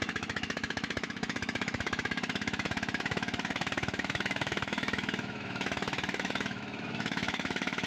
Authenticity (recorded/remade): remade